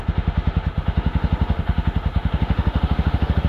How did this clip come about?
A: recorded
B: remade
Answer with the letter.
B